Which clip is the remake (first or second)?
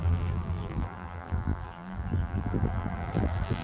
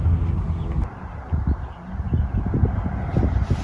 first